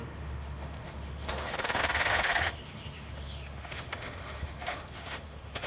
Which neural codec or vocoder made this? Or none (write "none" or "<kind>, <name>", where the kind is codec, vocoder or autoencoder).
autoencoder, DAC-VAE